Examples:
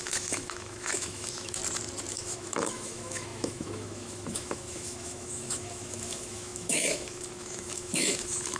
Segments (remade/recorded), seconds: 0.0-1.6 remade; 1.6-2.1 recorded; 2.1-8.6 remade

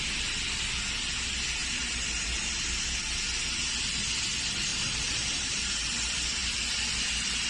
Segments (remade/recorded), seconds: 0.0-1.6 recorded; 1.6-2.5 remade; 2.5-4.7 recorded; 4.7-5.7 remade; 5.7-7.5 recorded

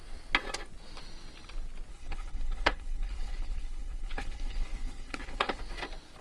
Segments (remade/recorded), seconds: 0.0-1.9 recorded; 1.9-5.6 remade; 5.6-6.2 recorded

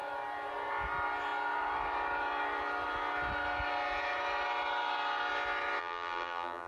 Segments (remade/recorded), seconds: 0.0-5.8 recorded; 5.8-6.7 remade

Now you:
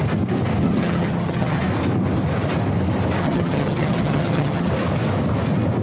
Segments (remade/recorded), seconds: 0.0-0.6 recorded; 0.6-1.6 remade; 1.6-3.2 recorded; 3.2-4.7 remade; 4.7-5.8 recorded